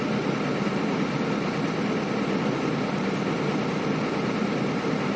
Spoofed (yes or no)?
no